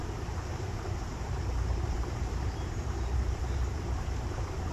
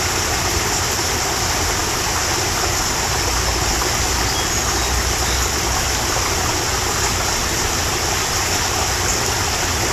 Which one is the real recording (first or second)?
second